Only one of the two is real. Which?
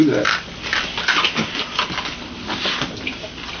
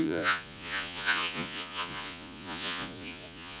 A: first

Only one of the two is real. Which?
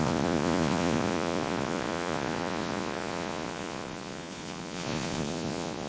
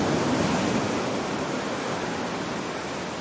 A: second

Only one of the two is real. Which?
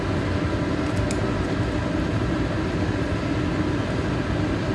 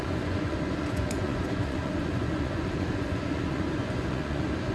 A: first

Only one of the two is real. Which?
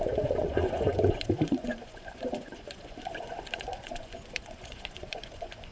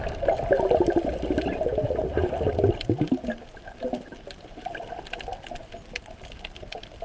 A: second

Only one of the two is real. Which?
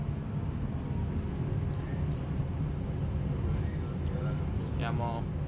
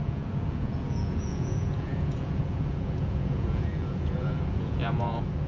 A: first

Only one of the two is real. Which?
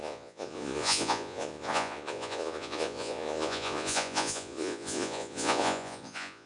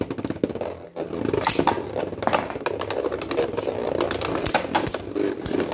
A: second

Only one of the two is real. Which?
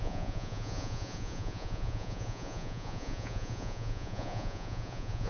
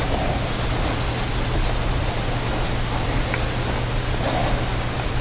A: second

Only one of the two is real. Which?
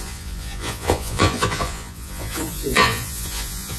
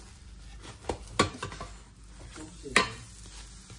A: second